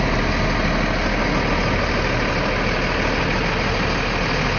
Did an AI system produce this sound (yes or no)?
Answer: no